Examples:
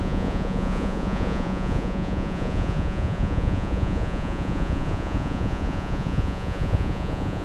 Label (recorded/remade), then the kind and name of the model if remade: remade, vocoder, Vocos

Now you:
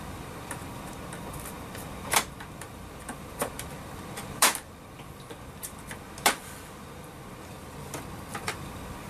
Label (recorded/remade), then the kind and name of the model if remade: remade, vocoder, BigVGAN v2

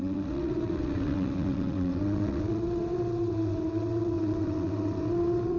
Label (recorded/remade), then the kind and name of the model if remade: remade, vocoder, WaveNeXt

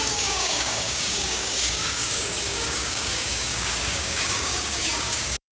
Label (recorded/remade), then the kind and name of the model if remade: remade, codec, DAC